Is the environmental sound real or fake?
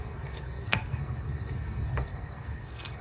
fake